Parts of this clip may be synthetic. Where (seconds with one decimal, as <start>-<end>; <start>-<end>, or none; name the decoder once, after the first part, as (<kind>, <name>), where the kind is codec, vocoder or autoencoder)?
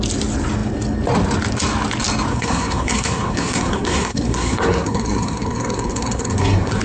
2.3-6.8 (codec, SNAC)